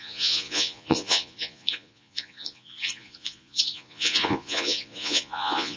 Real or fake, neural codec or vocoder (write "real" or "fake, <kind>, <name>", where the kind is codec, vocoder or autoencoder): fake, vocoder, Vocos